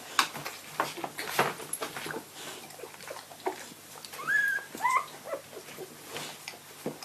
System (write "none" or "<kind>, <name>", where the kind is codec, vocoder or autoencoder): none